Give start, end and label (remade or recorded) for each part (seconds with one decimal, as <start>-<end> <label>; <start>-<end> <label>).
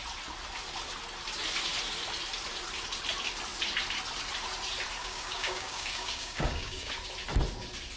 0.0-5.0 recorded; 5.0-6.9 remade; 6.9-8.0 recorded